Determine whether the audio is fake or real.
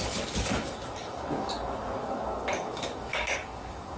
fake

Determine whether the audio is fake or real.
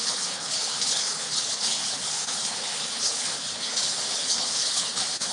fake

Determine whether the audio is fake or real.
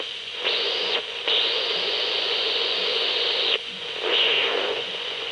fake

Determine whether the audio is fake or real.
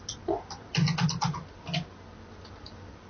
real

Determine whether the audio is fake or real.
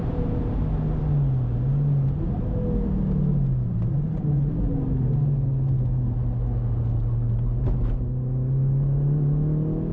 real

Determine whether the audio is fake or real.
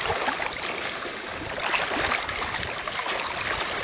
real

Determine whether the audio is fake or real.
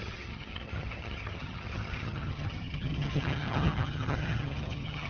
fake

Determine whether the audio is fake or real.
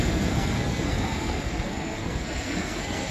fake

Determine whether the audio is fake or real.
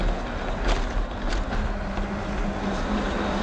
real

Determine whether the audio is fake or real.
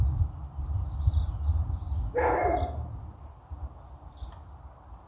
real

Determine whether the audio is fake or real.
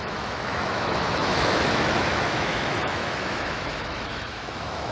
fake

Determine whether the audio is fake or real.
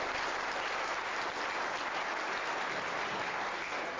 real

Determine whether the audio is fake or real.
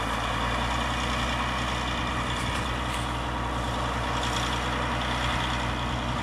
real